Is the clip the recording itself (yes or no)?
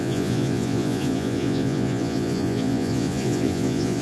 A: no